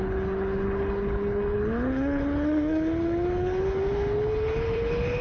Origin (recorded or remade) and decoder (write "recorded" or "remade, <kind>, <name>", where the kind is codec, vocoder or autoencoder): remade, codec, HILCodec